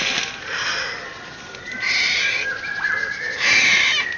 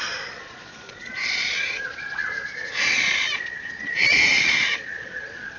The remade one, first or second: second